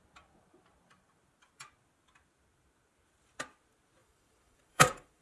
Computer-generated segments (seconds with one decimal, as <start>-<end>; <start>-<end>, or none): 4.0-5.2